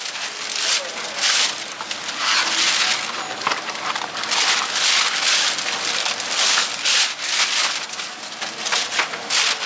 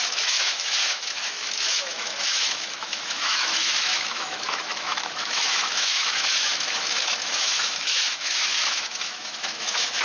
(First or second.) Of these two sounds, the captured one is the first